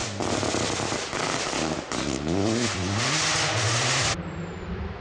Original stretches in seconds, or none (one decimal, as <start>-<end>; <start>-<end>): 0.0-5.0